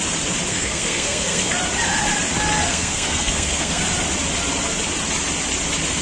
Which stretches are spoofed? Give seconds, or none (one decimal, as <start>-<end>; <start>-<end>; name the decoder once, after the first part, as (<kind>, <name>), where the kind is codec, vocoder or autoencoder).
0.5-1.5 (codec, SNAC); 2.7-3.8